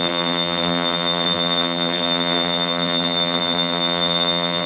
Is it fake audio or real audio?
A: fake